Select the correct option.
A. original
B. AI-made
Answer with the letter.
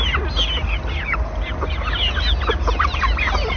A